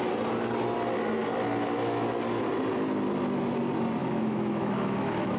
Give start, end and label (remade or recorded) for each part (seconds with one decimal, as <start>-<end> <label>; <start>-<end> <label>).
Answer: 0.0-4.0 recorded; 4.0-5.4 remade